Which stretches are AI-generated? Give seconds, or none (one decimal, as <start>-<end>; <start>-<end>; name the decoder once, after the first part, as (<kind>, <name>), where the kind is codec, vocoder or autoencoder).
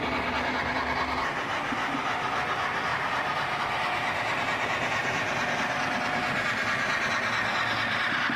2.9-3.6 (vocoder, BigVGAN v2); 5.0-5.8